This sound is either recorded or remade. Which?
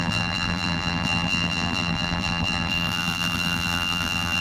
remade